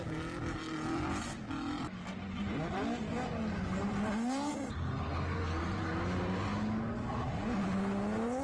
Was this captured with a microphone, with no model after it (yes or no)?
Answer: yes